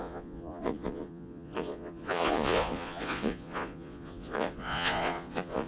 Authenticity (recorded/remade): remade